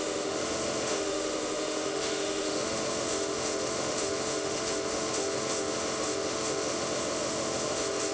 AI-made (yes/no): yes